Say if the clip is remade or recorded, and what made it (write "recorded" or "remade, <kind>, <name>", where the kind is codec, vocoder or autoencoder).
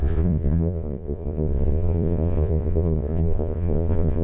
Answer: remade, vocoder, Vocos